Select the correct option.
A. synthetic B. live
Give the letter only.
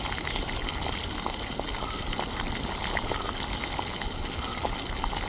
B